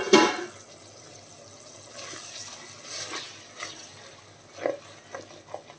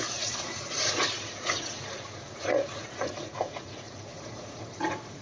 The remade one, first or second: second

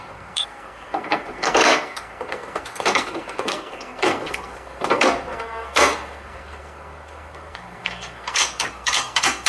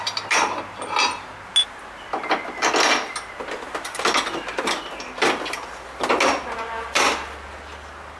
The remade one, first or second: first